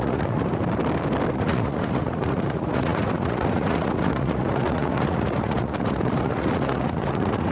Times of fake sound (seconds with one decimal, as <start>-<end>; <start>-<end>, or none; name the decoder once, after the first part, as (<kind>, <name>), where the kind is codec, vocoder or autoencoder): 0.0-0.6 (vocoder, Vocos); 1.3-7.5